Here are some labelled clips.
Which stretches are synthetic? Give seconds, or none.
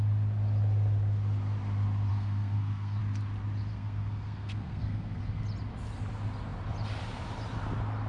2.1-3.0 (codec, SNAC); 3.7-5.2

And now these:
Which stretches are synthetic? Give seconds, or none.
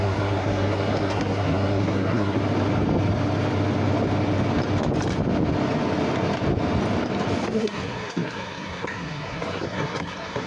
0.0-2.4 (codec, SNAC); 7.6-10.5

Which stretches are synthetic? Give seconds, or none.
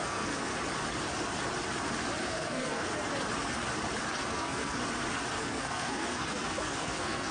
0.0-0.5 (codec, SNAC); 2.2-2.9; 4.3-4.8; 5.4-7.3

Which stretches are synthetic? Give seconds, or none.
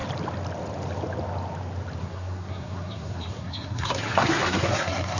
2.0-5.2 (codec, SNAC)